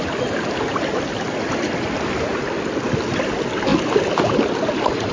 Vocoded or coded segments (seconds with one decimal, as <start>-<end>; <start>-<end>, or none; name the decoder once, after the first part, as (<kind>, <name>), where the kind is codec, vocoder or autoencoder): none